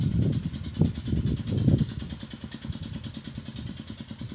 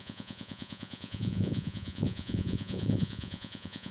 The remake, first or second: second